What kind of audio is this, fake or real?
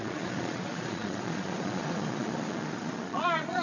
fake